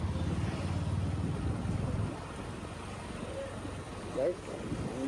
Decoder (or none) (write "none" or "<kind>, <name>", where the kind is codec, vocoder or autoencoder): none